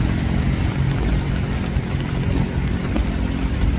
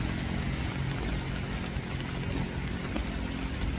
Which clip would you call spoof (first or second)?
first